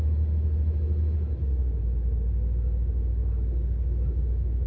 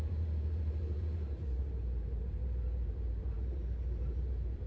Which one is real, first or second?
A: first